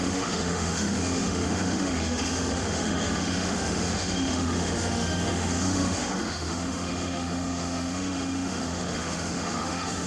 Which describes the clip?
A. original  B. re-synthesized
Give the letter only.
B